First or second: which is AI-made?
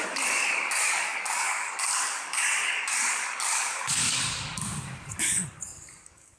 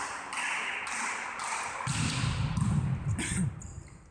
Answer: first